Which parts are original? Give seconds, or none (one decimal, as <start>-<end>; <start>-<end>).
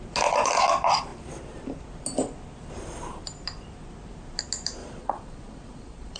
0.0-4.8